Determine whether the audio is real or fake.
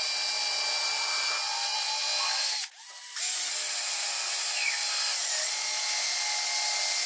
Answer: real